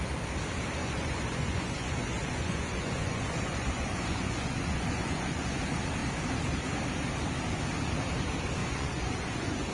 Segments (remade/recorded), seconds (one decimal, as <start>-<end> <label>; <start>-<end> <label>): 0.0-0.8 recorded; 0.8-5.6 remade; 5.6-8.6 recorded; 8.6-9.7 remade